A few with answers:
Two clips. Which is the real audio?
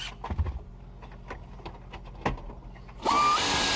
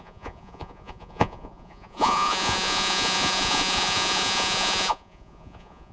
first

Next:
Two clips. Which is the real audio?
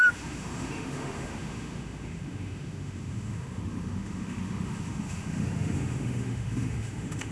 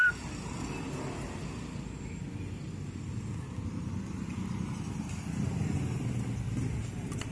second